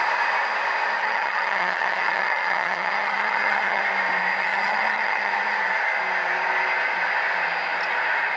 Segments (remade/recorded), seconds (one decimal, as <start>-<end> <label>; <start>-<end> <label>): 0.0-1.0 recorded; 1.0-3.8 remade; 3.8-4.4 recorded; 4.4-5.3 remade; 5.3-8.4 recorded